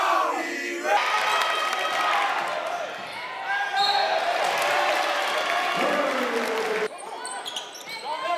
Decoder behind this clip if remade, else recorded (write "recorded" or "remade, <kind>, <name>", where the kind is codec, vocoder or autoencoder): recorded